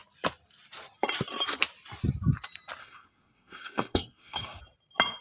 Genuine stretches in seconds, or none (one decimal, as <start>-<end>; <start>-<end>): 0.0-2.8; 4.6-5.2